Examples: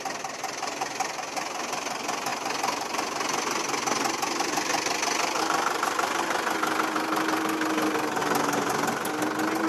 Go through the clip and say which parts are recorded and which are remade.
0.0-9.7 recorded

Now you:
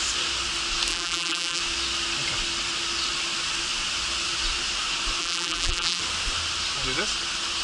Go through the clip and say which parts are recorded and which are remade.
0.0-0.9 recorded; 0.9-1.6 remade; 1.6-5.2 recorded; 5.2-6.0 remade; 6.0-7.6 recorded

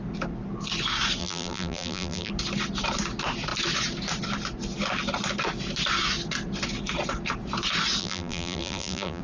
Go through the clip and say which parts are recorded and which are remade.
0.0-1.2 recorded; 1.2-2.3 remade; 2.3-8.0 recorded; 8.0-9.2 remade

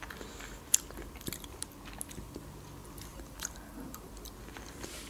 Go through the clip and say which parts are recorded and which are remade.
0.0-3.1 recorded; 3.1-4.1 remade; 4.1-5.1 recorded

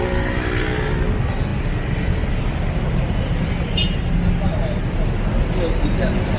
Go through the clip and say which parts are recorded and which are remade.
0.0-6.4 recorded

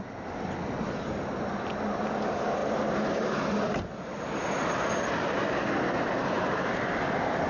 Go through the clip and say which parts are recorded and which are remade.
0.0-2.6 recorded; 2.6-3.4 remade; 3.4-3.9 recorded; 3.9-7.0 remade; 7.0-7.5 recorded